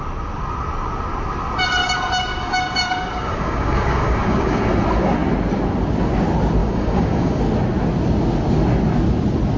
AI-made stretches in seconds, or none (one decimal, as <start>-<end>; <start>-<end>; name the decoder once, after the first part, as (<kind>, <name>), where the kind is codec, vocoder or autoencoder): 1.8-4.6 (codec, DAC); 6.6-7.4